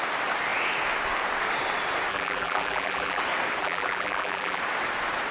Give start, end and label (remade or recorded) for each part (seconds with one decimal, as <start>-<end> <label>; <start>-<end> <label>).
0.0-2.1 recorded; 2.1-3.2 remade; 3.2-3.6 recorded; 3.6-4.6 remade; 4.6-5.3 recorded